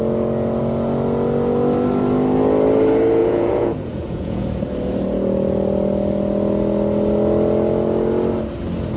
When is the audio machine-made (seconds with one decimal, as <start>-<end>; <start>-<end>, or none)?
3.2-4.4

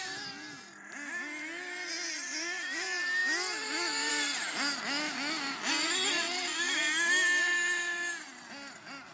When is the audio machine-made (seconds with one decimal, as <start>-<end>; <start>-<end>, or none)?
none

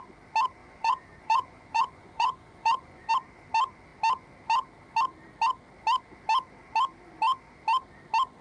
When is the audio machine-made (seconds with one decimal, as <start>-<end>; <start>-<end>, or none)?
0.6-3.1

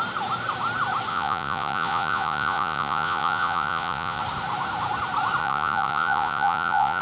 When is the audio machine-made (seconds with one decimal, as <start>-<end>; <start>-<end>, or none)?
1.1-4.2; 5.4-7.0

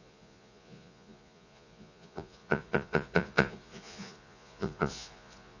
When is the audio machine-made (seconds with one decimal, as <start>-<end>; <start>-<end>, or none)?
0.0-5.6

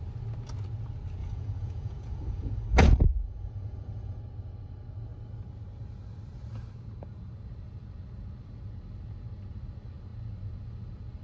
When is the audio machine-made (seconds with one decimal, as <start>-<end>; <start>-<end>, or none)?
1.2-4.2